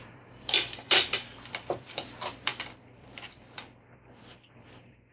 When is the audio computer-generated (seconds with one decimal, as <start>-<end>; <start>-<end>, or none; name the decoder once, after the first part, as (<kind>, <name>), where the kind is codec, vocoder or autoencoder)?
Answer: 0.0-5.1 (vocoder, BigVGAN v2)